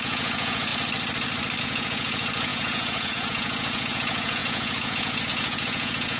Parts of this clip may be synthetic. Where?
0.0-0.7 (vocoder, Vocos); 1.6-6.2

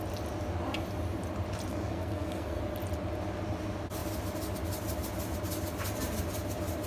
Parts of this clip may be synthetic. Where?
1.7-2.6 (codec, SNAC)

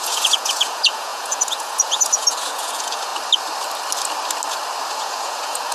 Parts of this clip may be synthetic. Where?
0.0-3.1 (vocoder, Vocos); 4.9-5.7